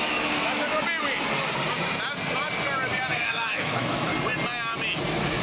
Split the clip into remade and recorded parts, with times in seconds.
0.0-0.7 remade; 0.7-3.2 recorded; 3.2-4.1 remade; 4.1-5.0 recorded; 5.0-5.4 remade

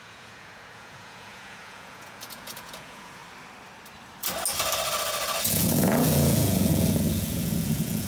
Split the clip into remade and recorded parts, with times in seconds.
0.0-3.2 remade; 3.2-5.5 recorded; 5.5-8.1 remade

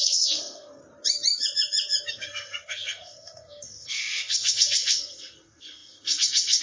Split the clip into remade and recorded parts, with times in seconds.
0.0-0.8 remade; 0.8-2.1 recorded; 2.1-6.6 remade